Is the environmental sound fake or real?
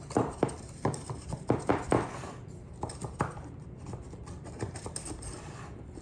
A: fake